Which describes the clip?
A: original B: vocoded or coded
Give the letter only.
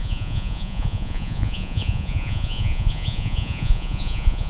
B